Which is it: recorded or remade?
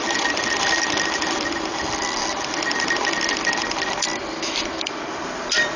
remade